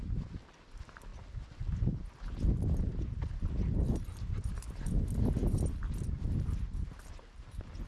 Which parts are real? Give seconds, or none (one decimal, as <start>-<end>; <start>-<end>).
0.0-7.9